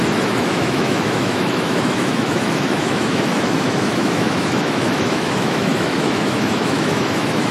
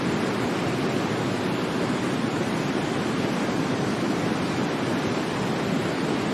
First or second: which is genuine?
second